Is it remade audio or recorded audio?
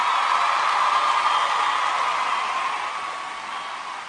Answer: recorded